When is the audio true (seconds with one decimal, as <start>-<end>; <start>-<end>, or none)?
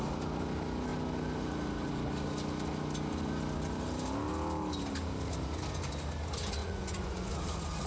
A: 0.0-6.6; 7.3-7.9